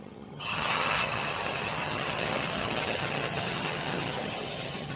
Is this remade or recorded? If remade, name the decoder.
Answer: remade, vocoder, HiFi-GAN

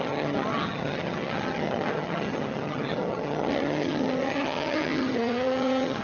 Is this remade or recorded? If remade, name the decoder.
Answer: remade, vocoder, HiFi-GAN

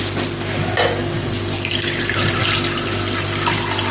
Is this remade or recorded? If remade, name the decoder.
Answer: recorded